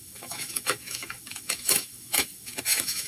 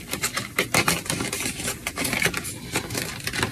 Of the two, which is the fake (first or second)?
first